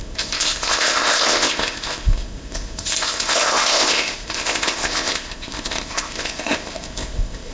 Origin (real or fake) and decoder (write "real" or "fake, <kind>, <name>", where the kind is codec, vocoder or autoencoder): fake, codec, ZipCodec